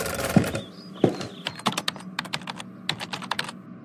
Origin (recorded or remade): recorded